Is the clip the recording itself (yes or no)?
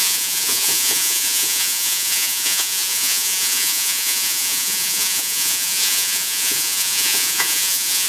no